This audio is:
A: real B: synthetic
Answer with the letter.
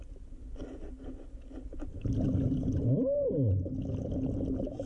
A